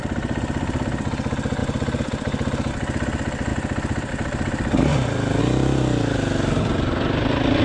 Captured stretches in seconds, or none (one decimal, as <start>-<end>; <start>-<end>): 0.0-1.6; 2.7-3.5; 4.1-4.9; 5.4-7.6

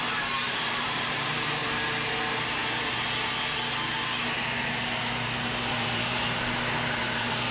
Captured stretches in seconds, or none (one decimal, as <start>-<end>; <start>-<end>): 1.6-5.7

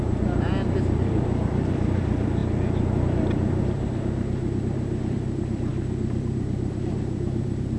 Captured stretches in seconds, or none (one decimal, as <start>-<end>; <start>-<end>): 2.4-5.1

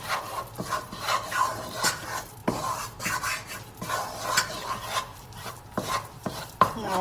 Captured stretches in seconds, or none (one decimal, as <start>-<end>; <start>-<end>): 0.0-1.5; 2.0-5.1

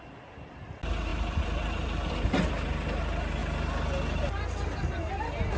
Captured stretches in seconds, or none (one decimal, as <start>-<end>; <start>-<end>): 0.0-1.1; 2.1-5.6

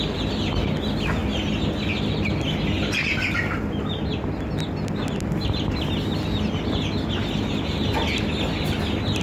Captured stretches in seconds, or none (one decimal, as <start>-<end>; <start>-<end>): 0.0-9.2